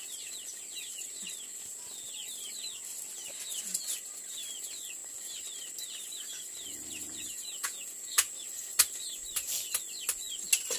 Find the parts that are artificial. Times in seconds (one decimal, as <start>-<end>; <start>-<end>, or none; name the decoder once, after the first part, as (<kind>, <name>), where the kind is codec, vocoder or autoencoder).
7.0-8.3 (vocoder, Vocos)